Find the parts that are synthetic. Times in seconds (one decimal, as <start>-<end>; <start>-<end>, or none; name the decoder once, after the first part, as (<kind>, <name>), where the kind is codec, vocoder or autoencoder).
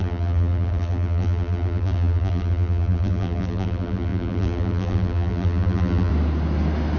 0.0-6.1 (vocoder, BigVGAN v2)